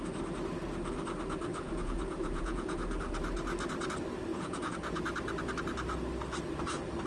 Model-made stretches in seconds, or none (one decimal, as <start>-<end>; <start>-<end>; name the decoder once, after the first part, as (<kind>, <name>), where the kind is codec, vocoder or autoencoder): 1.5-2.8 (vocoder, Vocos); 4.3-5.0